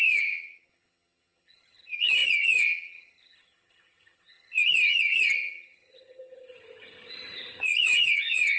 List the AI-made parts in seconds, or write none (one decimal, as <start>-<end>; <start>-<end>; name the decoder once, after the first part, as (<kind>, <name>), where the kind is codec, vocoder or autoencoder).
0.0-8.6 (vocoder, HiFi-GAN)